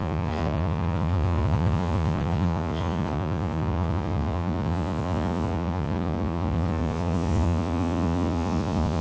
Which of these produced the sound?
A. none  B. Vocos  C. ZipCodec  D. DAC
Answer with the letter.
B